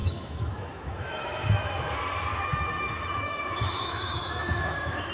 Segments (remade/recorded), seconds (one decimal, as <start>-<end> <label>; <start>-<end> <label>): 0.0-1.9 remade; 1.9-2.3 recorded; 2.3-5.1 remade